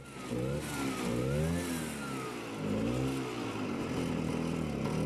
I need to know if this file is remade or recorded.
recorded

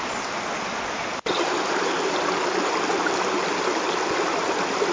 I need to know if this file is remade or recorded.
recorded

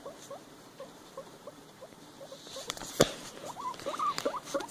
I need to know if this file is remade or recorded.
remade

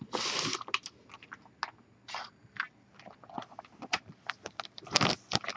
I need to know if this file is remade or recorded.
recorded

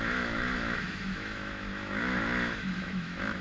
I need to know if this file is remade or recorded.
remade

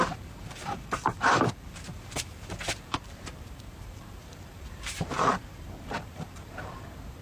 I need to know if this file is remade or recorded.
remade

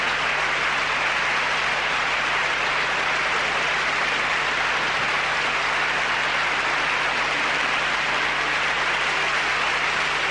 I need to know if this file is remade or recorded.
recorded